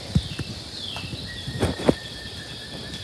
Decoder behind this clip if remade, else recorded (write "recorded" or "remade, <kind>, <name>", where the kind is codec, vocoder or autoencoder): recorded